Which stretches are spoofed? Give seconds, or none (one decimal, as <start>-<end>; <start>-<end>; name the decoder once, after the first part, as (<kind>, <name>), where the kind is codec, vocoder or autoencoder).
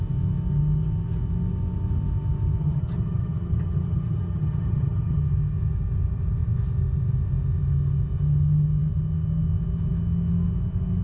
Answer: 2.6-5.2 (vocoder, HiFi-GAN)